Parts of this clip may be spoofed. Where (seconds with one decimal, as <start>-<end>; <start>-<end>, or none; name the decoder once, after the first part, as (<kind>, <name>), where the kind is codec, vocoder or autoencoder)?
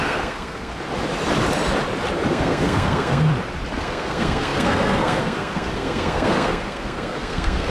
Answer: 0.0-0.7 (codec, SNAC); 2.3-3.3; 3.8-7.7